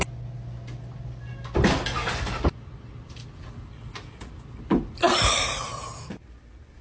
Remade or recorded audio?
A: recorded